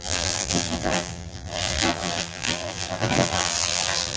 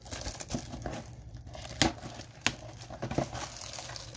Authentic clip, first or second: second